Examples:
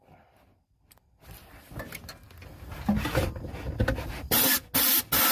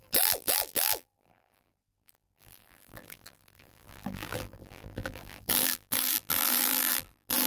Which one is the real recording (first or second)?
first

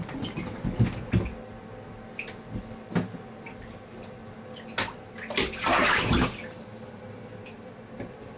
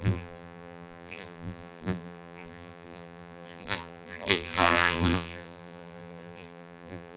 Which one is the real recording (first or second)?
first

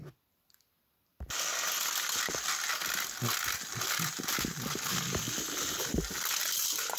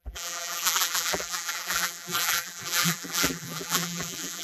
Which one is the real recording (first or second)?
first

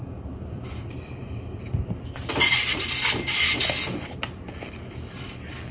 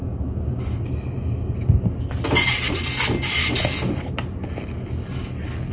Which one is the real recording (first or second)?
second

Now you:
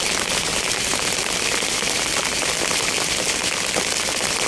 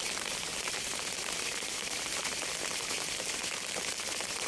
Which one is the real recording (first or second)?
first